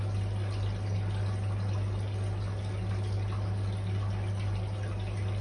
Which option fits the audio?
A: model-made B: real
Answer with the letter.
B